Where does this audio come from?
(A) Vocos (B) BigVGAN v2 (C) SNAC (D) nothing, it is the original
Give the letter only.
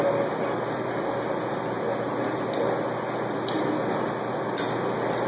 D